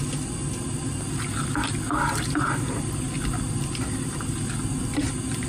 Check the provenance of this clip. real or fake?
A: real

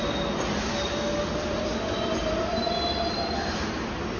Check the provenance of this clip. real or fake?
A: real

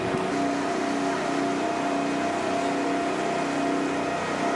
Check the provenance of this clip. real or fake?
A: real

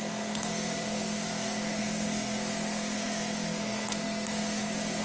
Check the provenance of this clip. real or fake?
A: fake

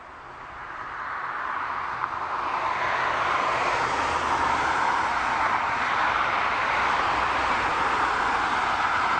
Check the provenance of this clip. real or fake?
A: real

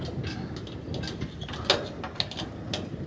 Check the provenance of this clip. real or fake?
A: real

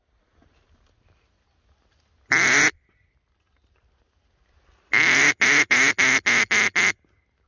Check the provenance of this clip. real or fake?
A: real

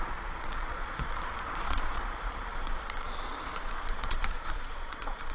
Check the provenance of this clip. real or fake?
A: fake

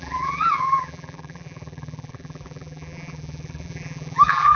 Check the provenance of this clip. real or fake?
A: fake